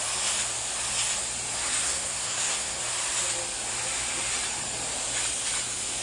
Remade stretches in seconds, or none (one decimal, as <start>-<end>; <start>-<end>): 1.8-2.8